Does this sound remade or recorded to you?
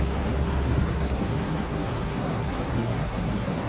remade